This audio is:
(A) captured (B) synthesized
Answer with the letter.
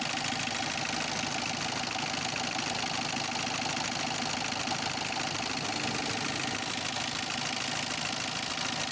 A